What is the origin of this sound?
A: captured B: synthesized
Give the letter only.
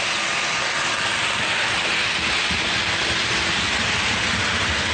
A